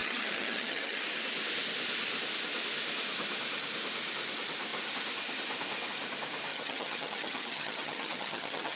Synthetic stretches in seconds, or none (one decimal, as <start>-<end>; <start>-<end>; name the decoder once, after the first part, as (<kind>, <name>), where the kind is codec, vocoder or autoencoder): 0.0-1.0 (vocoder, HiFi-GAN); 6.5-8.8